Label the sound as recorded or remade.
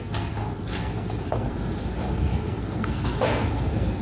remade